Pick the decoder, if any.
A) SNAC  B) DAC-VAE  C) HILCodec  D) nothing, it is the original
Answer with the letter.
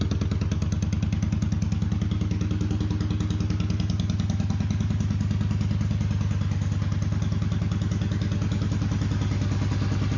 D